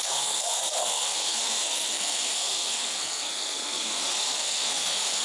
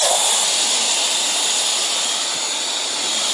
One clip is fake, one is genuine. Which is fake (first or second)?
first